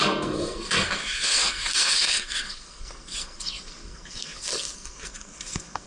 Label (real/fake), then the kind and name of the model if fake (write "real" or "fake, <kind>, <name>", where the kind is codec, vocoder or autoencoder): fake, codec, SNAC